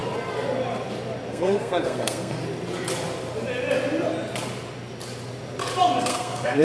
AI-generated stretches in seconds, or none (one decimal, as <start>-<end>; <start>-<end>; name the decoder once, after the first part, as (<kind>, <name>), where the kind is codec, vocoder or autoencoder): 1.3-2.4 (codec, SNAC); 6.0-6.6